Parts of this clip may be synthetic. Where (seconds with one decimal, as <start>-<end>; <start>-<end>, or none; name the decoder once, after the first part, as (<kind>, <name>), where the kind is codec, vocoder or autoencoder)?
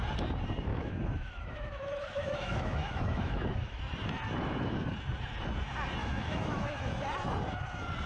0.7-3.8 (autoencoder, DAC-VAE); 6.0-6.9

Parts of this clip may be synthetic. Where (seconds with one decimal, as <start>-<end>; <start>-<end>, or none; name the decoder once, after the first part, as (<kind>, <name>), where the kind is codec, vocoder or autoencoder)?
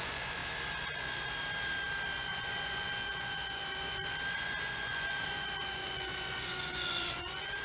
0.0-0.4 (vocoder, Vocos); 2.3-3.6; 4.3-7.6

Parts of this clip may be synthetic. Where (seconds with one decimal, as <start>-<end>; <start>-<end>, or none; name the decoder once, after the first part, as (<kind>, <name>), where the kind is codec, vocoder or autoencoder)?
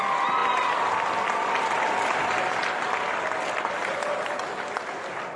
none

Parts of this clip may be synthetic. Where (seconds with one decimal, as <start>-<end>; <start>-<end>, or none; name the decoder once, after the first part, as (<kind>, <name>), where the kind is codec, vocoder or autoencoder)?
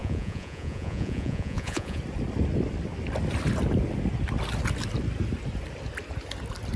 0.0-2.0 (vocoder, Vocos)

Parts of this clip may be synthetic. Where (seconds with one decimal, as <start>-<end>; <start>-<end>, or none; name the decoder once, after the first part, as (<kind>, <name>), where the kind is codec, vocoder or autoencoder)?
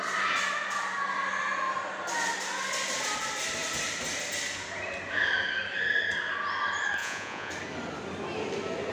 7.0-7.5 (vocoder, Vocos)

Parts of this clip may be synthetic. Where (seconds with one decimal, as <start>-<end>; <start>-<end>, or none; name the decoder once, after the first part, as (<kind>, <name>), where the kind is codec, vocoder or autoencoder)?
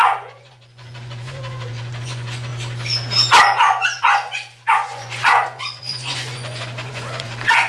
0.0-2.5 (vocoder, Vocos); 3.6-7.7